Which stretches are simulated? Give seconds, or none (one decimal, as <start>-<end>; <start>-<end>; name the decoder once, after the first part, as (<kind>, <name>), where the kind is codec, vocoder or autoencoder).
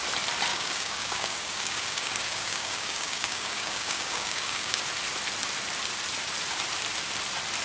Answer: 0.5-4.8 (codec, DAC)